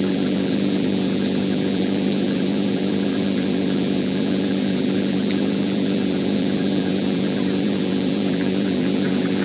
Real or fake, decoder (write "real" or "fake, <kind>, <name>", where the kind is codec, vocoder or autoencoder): fake, vocoder, BigVGAN v2